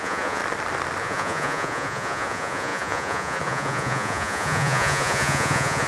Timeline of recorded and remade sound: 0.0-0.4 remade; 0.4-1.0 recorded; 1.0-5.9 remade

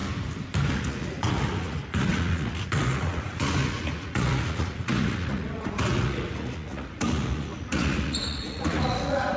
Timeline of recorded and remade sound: 0.0-0.7 recorded; 0.7-9.4 remade